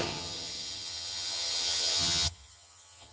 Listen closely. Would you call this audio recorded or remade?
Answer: remade